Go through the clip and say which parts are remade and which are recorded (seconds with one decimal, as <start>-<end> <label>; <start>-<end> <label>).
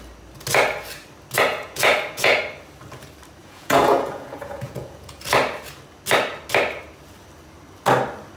0.0-1.5 recorded; 1.5-2.4 remade; 2.4-3.4 recorded; 3.4-5.2 remade; 5.2-8.4 recorded